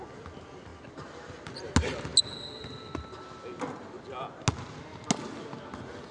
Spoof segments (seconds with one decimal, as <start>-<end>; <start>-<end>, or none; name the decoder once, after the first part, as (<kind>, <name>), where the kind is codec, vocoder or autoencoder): none